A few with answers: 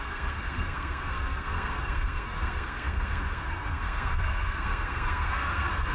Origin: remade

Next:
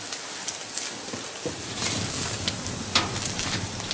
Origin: recorded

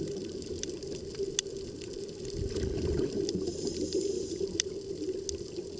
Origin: recorded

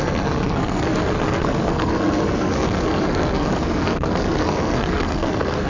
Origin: remade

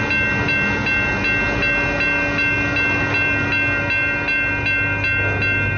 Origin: recorded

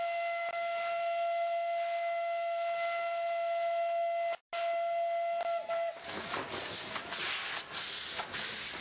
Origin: recorded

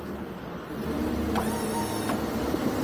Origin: recorded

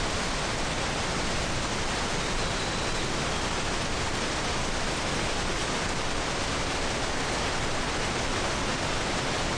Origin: recorded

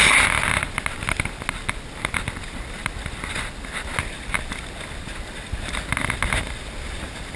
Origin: recorded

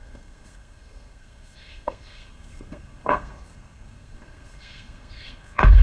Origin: remade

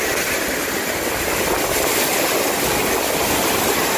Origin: recorded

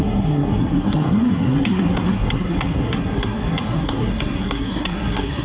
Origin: remade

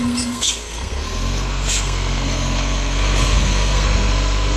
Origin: remade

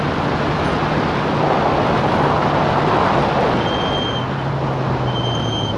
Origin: recorded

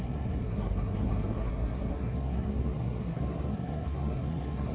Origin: remade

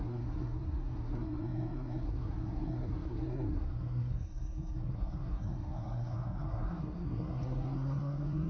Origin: remade